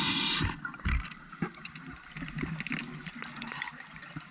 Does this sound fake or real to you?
real